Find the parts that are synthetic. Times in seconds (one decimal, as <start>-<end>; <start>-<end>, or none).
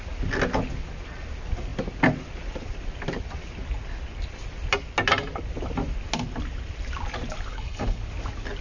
7.5-8.0